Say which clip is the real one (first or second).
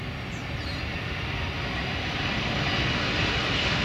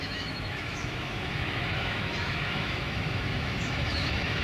first